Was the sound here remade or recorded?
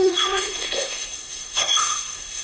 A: remade